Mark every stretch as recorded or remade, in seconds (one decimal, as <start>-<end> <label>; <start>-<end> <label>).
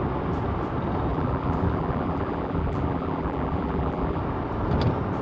0.0-1.1 recorded; 1.1-4.2 remade; 4.2-5.2 recorded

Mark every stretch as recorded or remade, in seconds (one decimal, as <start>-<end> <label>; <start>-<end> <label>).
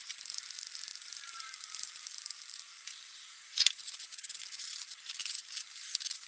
0.0-6.3 remade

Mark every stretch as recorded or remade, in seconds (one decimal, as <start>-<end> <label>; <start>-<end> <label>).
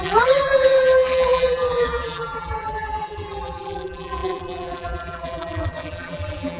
0.0-6.6 remade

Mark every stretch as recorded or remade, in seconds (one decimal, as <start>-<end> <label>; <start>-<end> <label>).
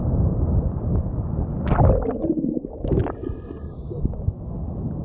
0.0-0.6 remade; 0.6-5.0 recorded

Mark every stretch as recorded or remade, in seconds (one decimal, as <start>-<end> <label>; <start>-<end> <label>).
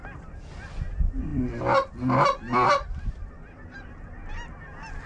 0.0-0.7 remade; 0.7-1.3 recorded; 1.3-4.0 remade; 4.0-5.1 recorded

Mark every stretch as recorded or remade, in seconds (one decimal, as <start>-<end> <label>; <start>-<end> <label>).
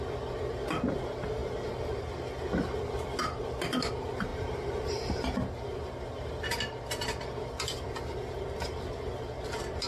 0.0-4.3 recorded; 4.3-4.8 remade; 4.8-9.9 recorded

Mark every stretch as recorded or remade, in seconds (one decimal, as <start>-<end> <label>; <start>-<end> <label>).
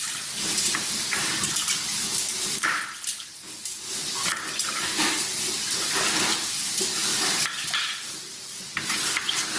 0.0-3.3 remade; 3.3-4.7 recorded; 4.7-9.6 remade